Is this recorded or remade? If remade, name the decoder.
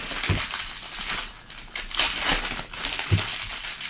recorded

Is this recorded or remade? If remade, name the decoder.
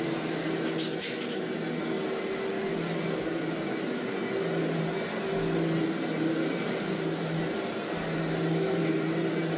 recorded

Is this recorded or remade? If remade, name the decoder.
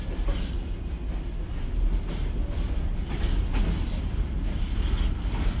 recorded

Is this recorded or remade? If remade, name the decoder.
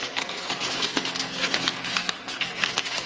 remade, codec, SNAC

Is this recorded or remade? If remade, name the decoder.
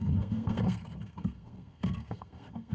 remade, codec, SNAC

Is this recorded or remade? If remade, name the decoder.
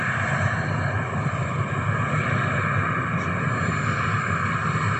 recorded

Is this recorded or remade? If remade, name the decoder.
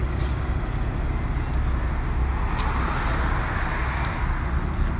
recorded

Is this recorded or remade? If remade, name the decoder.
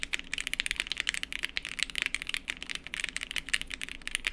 recorded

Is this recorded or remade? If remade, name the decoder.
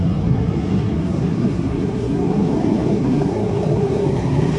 remade, codec, SNAC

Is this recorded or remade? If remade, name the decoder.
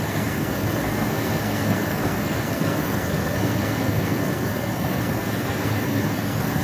remade, codec, SNAC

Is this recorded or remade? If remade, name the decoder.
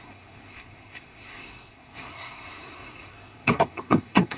remade, codec, SNAC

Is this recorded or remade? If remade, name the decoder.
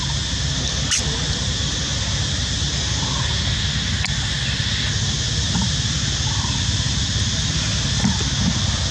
recorded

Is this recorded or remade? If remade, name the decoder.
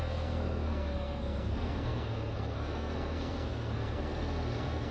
remade, codec, SNAC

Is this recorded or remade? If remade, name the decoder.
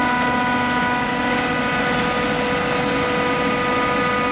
recorded